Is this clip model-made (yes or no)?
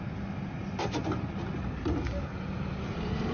no